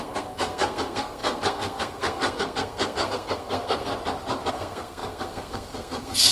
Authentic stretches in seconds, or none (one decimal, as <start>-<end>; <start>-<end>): 3.9-4.5